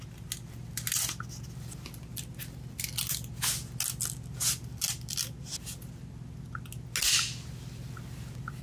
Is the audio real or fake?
real